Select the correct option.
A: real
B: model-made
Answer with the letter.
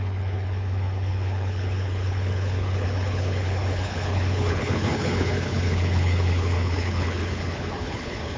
B